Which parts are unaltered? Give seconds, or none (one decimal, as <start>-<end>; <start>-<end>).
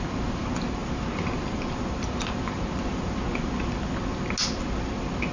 0.0-5.3